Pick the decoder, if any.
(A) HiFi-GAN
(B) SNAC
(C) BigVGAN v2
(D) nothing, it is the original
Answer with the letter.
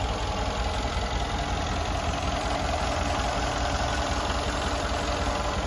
D